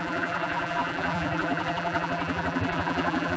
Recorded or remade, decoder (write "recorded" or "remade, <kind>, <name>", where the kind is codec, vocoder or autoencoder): remade, vocoder, BigVGAN v2